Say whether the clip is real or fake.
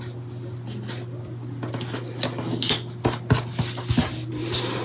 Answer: real